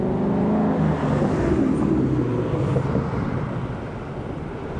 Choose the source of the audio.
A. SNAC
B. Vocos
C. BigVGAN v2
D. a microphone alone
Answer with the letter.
D